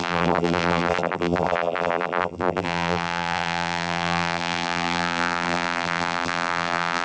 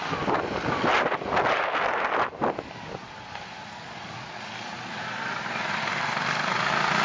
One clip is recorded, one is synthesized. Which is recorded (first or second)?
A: second